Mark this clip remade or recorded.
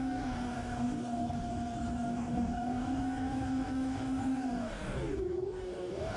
remade